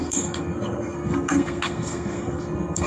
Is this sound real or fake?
fake